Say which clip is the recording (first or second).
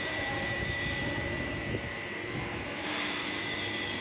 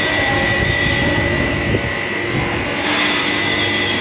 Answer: second